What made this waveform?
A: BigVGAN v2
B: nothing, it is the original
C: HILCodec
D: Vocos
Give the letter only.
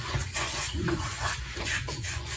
D